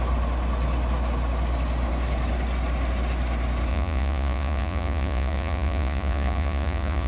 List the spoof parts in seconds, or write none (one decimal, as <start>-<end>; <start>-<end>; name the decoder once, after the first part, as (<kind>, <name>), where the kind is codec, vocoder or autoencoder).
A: 3.7-7.1 (vocoder, Vocos)